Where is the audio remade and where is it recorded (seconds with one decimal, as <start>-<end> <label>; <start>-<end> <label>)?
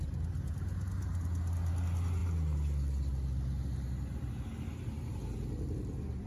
0.0-6.3 recorded